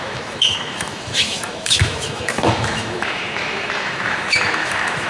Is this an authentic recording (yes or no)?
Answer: no